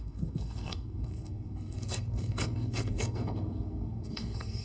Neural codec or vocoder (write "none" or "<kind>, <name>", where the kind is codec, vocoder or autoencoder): codec, SNAC